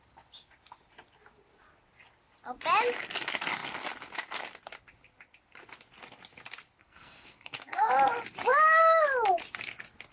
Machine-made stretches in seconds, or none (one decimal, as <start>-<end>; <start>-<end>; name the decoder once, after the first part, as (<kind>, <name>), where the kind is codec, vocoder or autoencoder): 6.8-7.9 (codec, SNAC)